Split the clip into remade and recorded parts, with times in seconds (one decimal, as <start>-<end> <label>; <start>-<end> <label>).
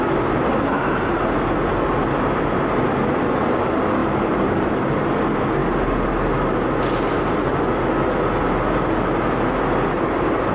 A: 0.0-4.0 recorded; 4.0-4.7 remade; 4.7-10.5 recorded